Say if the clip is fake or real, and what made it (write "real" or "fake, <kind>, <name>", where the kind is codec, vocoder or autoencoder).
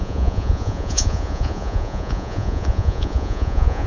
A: fake, vocoder, Vocos